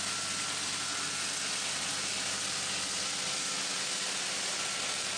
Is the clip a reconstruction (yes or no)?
no